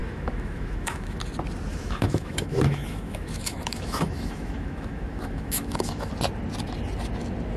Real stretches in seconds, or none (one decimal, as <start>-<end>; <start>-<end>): 1.2-1.7; 6.1-7.6